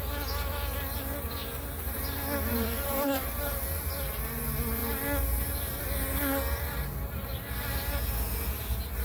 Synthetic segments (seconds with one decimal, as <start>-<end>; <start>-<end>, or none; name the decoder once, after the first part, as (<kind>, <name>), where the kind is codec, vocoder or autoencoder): 2.5-3.6 (vocoder, BigVGAN v2)